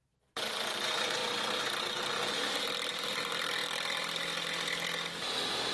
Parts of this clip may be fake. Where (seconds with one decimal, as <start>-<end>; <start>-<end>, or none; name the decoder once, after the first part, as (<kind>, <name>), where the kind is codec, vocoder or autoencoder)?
none